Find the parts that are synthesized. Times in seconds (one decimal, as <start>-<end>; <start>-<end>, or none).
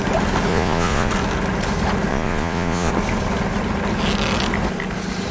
0.5-1.1; 2.1-2.9